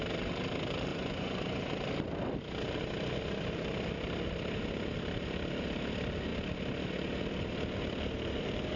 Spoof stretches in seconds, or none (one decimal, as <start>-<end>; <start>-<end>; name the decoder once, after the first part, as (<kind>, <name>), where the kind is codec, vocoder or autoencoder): 0.9-1.7 (vocoder, Vocos)